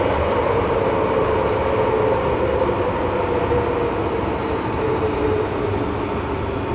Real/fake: real